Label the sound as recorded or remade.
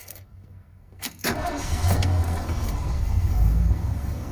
remade